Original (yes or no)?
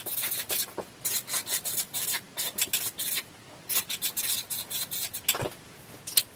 yes